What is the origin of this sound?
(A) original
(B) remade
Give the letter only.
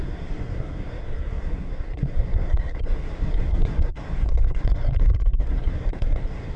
B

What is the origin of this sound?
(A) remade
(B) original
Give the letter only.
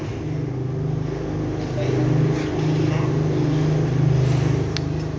B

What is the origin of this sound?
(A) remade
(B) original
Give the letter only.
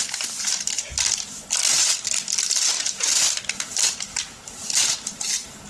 B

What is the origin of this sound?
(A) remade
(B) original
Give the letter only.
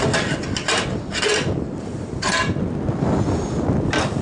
B